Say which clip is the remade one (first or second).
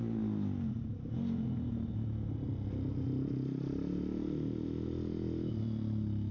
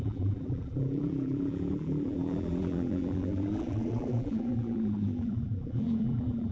second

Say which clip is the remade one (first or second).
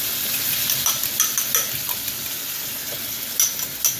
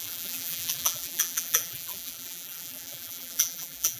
second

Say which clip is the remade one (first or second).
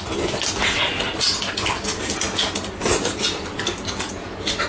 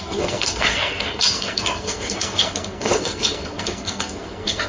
second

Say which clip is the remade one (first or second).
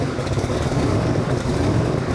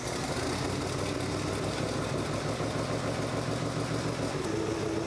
first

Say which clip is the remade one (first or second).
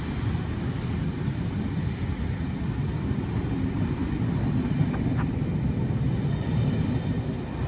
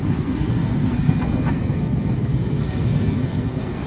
second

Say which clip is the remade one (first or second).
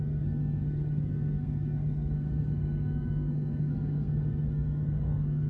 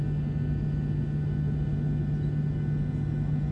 first